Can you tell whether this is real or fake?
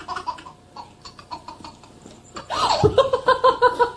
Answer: real